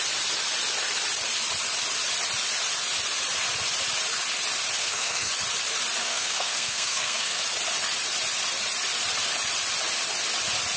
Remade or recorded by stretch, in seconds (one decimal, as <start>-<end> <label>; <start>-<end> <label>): 0.0-4.8 recorded; 4.8-5.3 remade; 5.3-6.0 recorded; 6.0-7.4 remade; 7.4-10.8 recorded